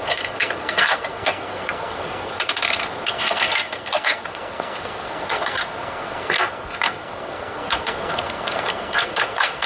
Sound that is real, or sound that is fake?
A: fake